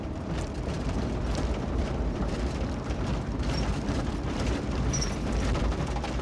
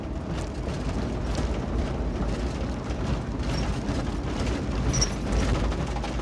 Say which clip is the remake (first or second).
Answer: first